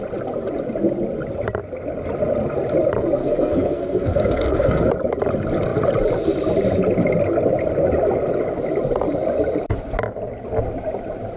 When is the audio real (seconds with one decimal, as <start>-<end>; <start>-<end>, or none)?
0.0-3.2; 4.9-11.4